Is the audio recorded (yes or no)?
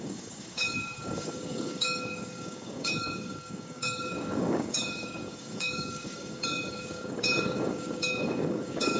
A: no